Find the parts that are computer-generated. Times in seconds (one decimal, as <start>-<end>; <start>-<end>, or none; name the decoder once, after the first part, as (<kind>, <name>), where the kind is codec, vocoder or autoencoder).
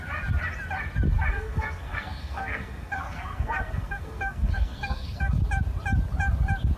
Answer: 1.3-5.4 (codec, SNAC)